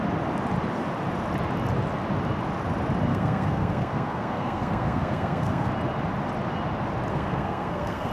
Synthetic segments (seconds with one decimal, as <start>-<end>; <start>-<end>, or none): 3.1-5.7; 7.1-8.1